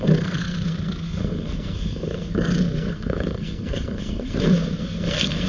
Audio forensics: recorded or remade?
remade